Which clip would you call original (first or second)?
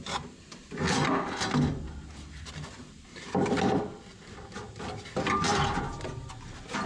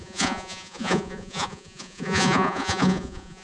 first